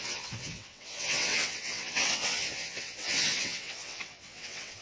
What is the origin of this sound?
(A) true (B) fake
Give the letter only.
B